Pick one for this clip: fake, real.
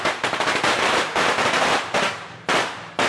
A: fake